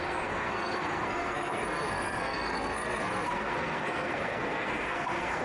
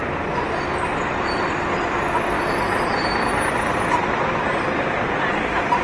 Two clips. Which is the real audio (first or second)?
second